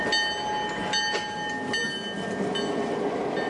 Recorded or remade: recorded